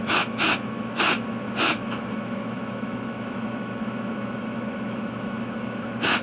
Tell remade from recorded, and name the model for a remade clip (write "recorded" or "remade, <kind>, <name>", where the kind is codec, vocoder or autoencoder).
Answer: remade, autoencoder, DAC-VAE